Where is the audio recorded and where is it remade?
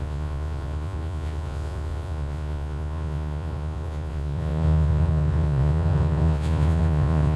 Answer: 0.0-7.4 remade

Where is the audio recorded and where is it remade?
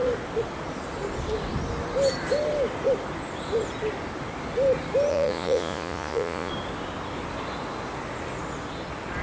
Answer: 0.0-5.1 recorded; 5.1-6.5 remade; 6.5-9.2 recorded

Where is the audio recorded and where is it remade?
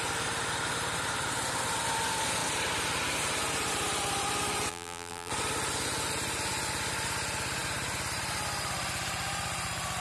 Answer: 0.0-4.7 recorded; 4.7-5.3 remade; 5.3-10.0 recorded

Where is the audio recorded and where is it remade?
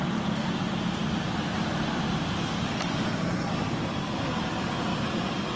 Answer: 0.0-5.6 recorded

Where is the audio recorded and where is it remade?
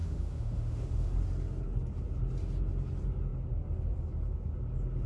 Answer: 0.0-1.1 remade; 1.1-5.1 recorded